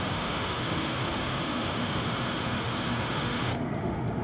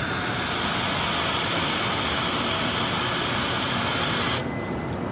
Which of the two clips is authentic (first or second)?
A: second